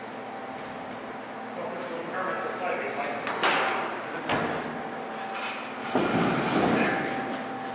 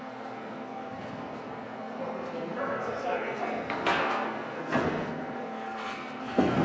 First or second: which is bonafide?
first